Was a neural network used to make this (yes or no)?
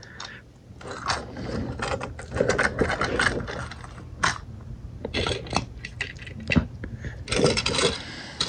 no